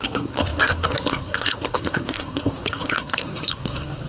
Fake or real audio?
fake